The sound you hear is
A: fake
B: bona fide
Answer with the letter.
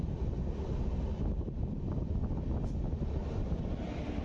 B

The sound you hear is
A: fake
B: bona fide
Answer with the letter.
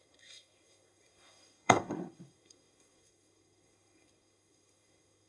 A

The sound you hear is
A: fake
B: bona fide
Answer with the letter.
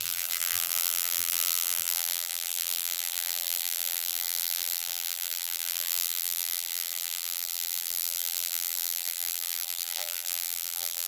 A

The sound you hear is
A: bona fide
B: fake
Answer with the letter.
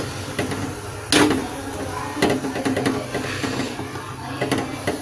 A